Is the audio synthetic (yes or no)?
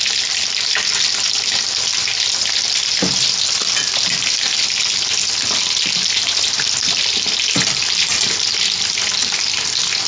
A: no